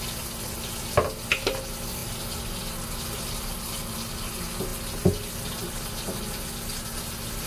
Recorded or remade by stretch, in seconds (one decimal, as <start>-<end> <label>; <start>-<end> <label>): 0.0-7.5 recorded